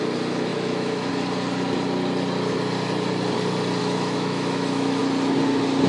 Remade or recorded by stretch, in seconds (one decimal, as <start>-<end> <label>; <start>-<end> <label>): 0.0-0.5 recorded; 0.5-1.1 remade; 1.1-3.8 recorded; 3.8-5.0 remade; 5.0-5.9 recorded